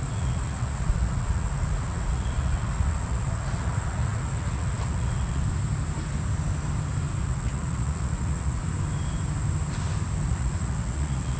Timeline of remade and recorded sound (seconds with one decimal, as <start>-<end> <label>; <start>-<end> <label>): 0.0-5.4 remade; 5.4-7.2 recorded; 7.2-8.6 remade; 8.6-10.3 recorded; 10.3-11.4 remade